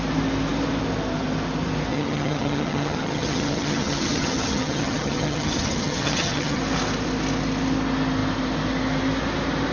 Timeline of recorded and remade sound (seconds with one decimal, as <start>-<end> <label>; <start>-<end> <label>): 0.0-1.9 recorded; 1.9-6.6 remade; 6.6-9.7 recorded